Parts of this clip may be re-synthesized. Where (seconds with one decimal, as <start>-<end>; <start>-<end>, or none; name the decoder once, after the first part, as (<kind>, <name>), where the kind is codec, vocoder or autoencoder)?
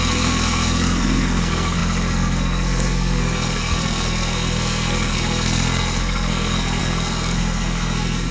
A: 0.0-8.3 (codec, SNAC)